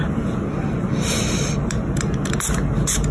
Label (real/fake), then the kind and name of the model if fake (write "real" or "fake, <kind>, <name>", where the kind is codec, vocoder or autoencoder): real